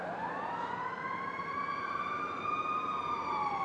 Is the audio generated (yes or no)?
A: yes